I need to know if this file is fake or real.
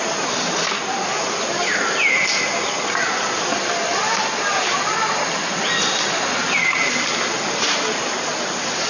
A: real